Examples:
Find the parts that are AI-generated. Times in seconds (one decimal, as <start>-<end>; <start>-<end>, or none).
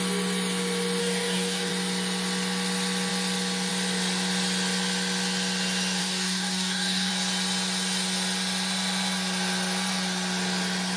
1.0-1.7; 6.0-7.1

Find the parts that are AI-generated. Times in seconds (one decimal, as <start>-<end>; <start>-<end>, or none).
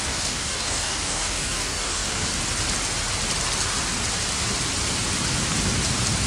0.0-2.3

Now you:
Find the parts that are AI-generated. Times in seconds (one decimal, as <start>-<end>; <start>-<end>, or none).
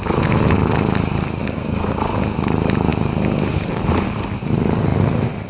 1.4-1.9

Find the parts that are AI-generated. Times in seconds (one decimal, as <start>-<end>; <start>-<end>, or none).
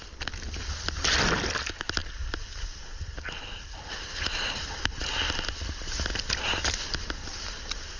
none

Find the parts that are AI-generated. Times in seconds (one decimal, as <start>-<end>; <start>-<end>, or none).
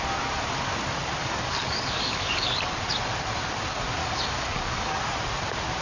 1.2-2.7; 4.0-5.0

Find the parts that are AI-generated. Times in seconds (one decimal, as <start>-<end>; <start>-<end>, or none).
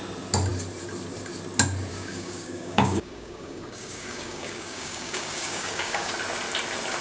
1.9-6.1